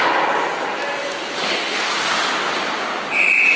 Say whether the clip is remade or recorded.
recorded